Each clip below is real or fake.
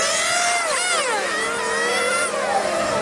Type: real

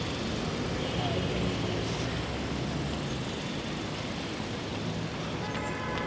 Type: real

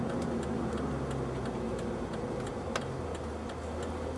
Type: real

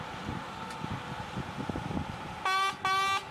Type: real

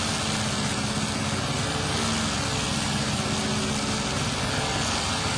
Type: real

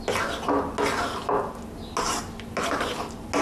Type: real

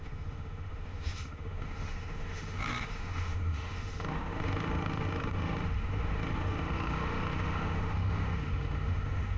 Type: fake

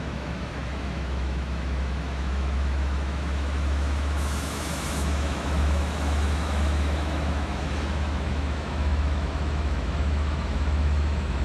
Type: fake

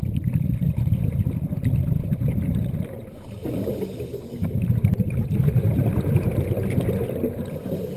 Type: real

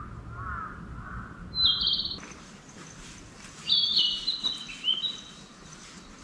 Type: real